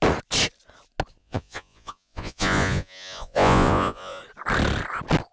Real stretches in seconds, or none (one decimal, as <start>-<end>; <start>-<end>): 0.0-1.2; 4.2-5.3